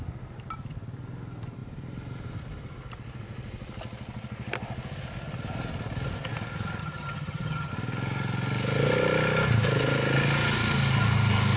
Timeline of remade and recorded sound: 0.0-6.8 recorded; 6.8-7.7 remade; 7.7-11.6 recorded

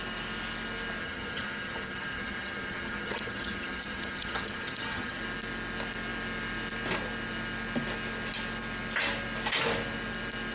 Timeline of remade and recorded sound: 0.0-1.0 recorded; 1.0-5.2 remade; 5.2-10.5 recorded

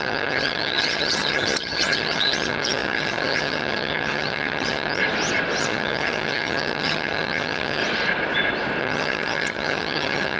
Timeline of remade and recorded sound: 0.0-5.0 remade; 5.0-5.6 recorded; 5.6-7.8 remade; 7.8-8.8 recorded; 8.8-10.4 remade

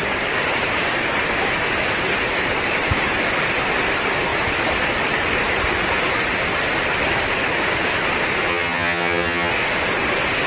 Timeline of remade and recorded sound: 0.0-8.5 recorded; 8.5-9.5 remade; 9.5-10.5 recorded

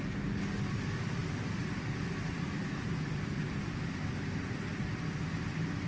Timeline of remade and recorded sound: 0.0-5.9 recorded

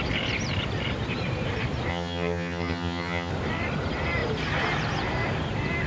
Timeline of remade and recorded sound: 0.0-1.9 recorded; 1.9-3.3 remade; 3.3-5.9 recorded